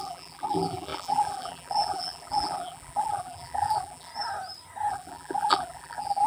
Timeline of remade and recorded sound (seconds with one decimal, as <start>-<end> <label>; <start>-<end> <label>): 0.0-4.1 remade; 4.1-4.9 recorded; 4.9-6.3 remade